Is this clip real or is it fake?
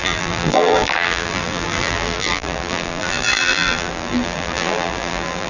fake